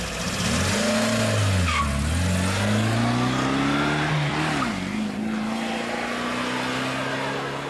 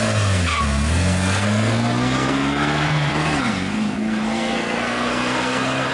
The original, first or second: first